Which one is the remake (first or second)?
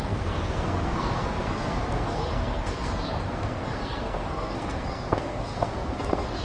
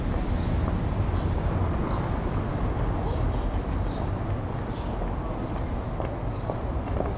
first